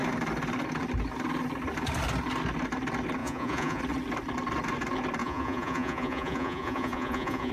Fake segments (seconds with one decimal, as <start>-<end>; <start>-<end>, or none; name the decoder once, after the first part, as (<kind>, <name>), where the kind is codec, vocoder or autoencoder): 3.2-3.8 (vocoder, Vocos); 5.2-7.5